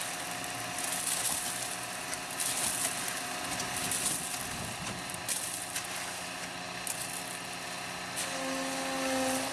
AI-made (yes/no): no